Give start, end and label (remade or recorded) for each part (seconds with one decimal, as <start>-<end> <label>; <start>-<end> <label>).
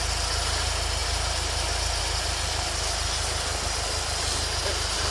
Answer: 0.0-5.1 recorded